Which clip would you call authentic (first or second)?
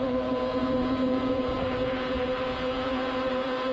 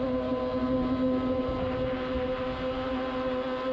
second